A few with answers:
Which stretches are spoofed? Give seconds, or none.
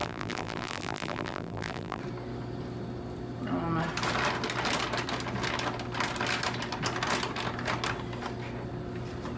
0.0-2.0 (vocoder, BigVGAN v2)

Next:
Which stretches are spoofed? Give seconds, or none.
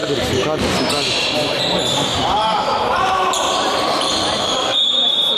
0.0-1.6 (vocoder, BigVGAN v2); 2.1-5.4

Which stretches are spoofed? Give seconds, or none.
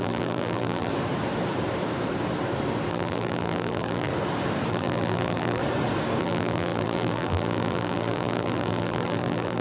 0.0-0.9 (vocoder, BigVGAN v2); 2.9-4.1; 4.7-5.6; 6.2-9.6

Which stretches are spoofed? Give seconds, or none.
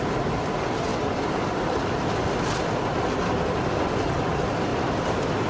0.9-3.0 (vocoder, BigVGAN v2); 4.7-5.5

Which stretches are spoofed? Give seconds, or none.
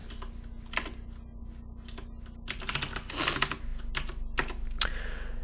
none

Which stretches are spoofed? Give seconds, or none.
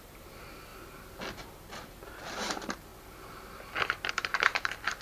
0.0-0.7 (vocoder, BigVGAN v2); 1.3-2.9; 4.1-5.0